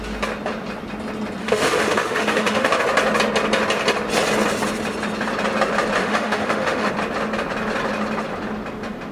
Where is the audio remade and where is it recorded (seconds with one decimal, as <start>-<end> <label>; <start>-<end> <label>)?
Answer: 0.0-1.4 recorded; 1.4-2.8 remade; 2.8-6.0 recorded; 6.0-6.9 remade; 6.9-9.1 recorded